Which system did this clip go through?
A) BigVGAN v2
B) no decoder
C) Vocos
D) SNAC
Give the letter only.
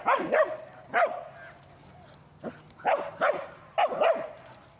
B